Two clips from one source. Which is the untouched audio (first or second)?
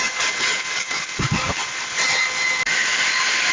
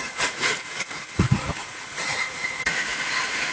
first